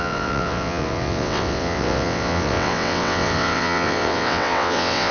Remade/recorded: remade